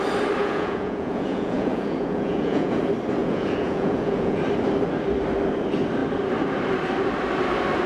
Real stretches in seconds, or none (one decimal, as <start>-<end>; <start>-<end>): 0.0-0.4; 2.8-3.2; 4.4-7.9